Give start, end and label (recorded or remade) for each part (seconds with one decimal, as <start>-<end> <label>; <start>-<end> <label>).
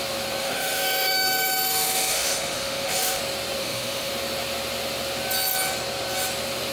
0.0-0.4 recorded; 0.4-3.2 remade; 3.2-3.6 recorded; 3.6-4.1 remade; 4.1-6.7 recorded